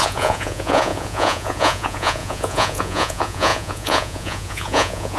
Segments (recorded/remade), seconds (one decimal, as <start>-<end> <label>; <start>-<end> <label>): 0.0-5.2 remade